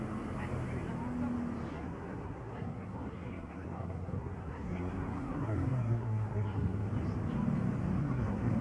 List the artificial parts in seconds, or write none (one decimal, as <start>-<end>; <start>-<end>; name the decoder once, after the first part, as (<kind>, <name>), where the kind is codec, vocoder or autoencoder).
1.7-6.9 (codec, SNAC); 8.0-8.6